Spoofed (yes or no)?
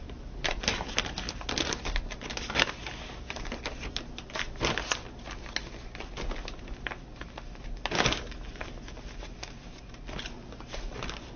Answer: no